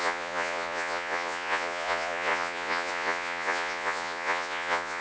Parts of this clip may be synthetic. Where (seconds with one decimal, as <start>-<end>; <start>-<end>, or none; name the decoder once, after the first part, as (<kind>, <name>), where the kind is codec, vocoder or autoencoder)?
0.0-5.0 (vocoder, Vocos)